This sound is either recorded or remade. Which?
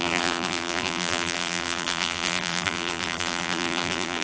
remade